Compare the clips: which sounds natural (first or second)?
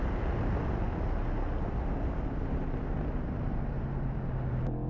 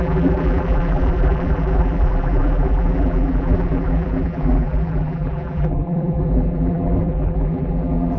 first